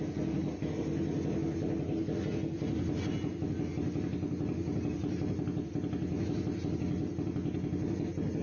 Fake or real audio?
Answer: real